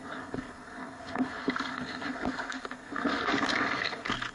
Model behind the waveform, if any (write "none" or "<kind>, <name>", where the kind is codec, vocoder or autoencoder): codec, SNAC